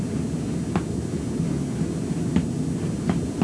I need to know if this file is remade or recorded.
recorded